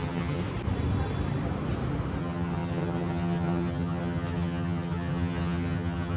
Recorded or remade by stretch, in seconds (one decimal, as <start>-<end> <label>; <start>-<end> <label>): 0.0-0.4 remade; 0.4-2.2 recorded; 2.2-6.2 remade